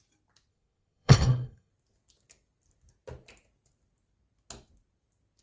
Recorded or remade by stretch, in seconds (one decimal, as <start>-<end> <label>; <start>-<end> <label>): 0.0-0.5 recorded; 0.5-1.7 remade; 1.7-5.4 recorded